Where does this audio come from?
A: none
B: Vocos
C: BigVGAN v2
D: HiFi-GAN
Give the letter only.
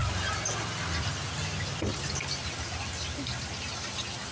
A